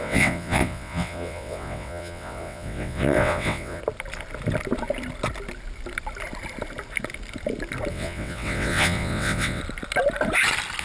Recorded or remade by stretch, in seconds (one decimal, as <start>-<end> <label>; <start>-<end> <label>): 0.0-3.8 remade; 3.8-7.9 recorded; 7.9-9.6 remade; 9.6-10.8 recorded